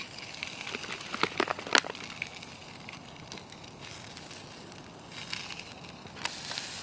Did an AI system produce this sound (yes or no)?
no